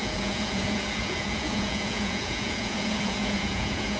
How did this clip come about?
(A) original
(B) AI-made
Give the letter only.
B